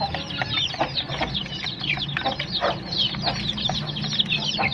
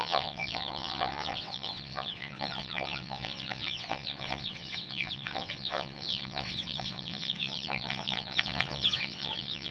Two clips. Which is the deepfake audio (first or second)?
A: second